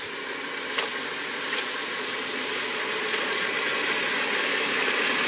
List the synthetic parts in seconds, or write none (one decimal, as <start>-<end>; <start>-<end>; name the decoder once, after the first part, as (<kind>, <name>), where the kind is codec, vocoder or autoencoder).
2.7-3.6 (vocoder, Vocos)